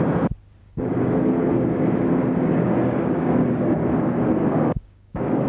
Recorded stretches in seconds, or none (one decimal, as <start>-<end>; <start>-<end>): 0.0-0.6; 1.5-2.2